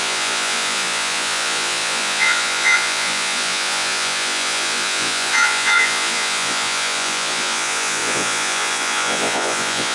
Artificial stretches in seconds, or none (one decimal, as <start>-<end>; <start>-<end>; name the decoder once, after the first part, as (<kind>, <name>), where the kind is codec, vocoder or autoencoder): 0.0-9.9 (vocoder, Vocos)